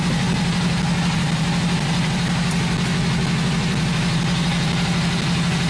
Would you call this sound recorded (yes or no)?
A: no